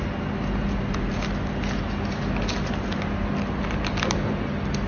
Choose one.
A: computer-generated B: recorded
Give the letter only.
B